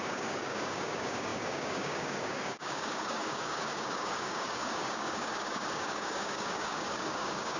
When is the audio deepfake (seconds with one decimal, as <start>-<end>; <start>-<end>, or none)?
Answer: 0.0-7.6